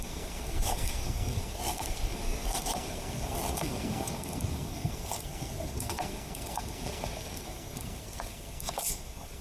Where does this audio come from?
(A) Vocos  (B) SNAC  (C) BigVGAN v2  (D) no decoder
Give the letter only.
B